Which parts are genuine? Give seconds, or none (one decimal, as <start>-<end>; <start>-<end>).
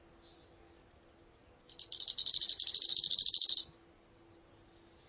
0.0-5.1